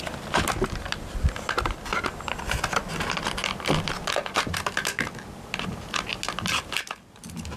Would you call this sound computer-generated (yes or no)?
no